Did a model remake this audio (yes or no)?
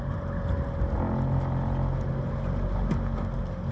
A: no